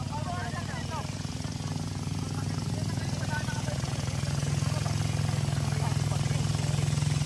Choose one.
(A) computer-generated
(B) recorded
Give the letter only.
B